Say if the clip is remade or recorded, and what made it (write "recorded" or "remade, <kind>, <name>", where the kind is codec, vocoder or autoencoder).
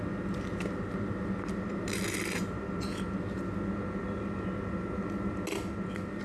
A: recorded